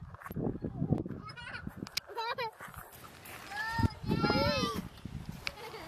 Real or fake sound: real